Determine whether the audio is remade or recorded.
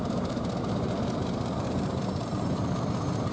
remade